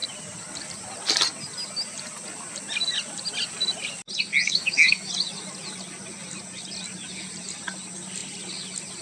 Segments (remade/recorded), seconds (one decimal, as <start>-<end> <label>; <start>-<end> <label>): 0.0-4.3 recorded; 4.3-5.1 remade; 5.1-9.0 recorded